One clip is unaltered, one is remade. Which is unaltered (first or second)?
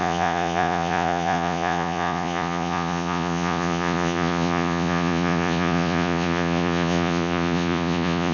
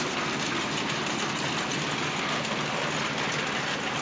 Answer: second